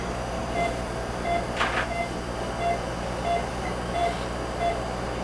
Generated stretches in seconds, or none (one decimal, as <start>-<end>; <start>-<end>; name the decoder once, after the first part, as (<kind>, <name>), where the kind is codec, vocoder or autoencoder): none